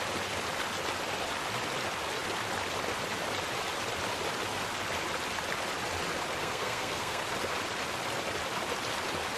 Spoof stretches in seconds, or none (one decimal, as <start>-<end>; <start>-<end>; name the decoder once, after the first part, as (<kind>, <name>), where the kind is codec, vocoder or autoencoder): 6.4-7.2 (codec, SNAC)